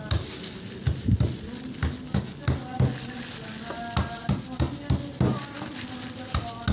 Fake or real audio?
real